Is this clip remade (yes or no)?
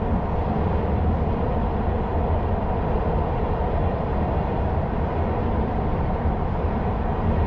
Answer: yes